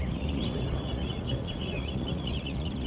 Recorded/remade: remade